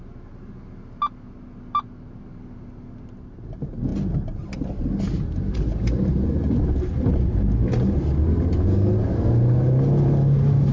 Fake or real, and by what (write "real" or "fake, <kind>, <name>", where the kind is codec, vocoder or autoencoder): real